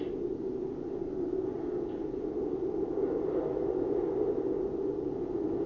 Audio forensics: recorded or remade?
recorded